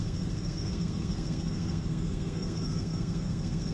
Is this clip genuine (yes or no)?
no